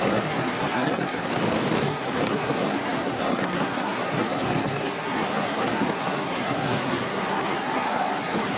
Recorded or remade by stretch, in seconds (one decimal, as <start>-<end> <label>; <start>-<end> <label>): 0.0-1.3 remade; 1.3-1.8 recorded; 1.8-8.6 remade